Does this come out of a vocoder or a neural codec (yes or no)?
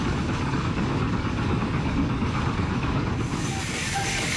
yes